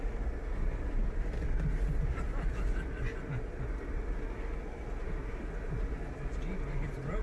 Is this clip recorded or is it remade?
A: recorded